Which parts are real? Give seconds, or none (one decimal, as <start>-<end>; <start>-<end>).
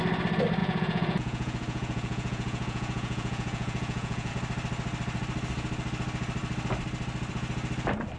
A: 0.0-0.6; 4.3-8.2